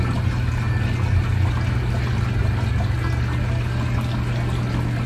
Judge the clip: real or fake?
real